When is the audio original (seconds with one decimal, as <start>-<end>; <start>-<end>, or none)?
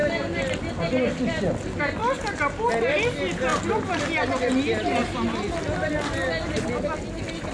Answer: 0.0-7.5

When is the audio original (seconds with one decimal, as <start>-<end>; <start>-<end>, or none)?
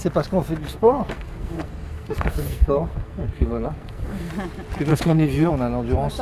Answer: 0.0-0.6; 4.3-4.9; 5.5-6.2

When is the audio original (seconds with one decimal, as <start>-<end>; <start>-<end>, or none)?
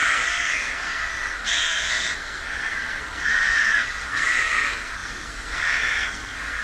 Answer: none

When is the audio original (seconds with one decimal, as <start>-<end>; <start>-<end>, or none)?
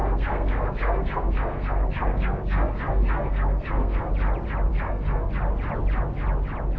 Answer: 4.1-4.7; 5.3-6.8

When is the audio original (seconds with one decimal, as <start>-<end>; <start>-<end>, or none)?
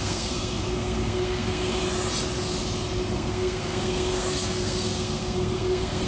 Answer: 1.8-3.1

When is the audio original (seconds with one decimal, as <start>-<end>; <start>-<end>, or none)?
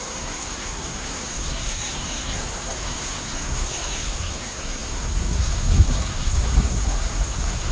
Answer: none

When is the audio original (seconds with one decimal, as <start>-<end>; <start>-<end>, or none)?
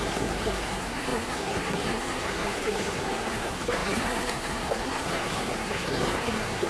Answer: none